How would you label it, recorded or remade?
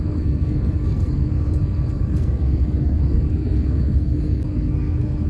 remade